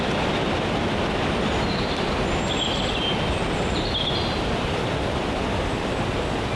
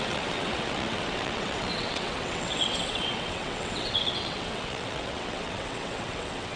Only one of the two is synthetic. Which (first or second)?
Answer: second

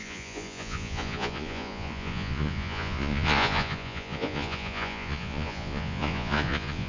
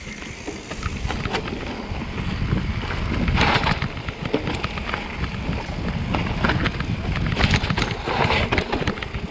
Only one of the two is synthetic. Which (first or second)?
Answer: first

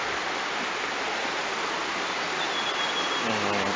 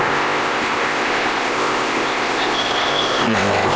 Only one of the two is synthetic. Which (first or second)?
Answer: second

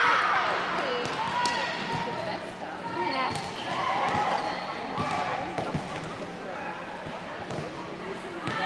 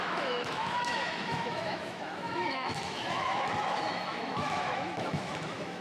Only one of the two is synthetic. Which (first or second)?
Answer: second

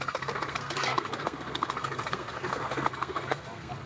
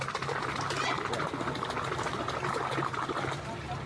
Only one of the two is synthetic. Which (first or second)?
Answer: first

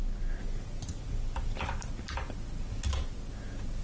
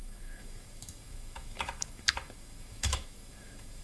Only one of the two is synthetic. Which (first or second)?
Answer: second